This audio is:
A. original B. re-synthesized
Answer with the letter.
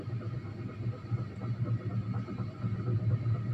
A